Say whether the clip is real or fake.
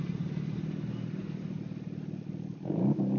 real